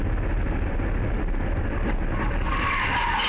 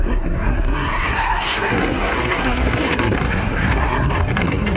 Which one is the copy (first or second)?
second